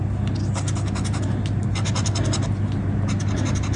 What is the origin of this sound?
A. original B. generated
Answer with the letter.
A